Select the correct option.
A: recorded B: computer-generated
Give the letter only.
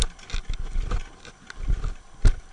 A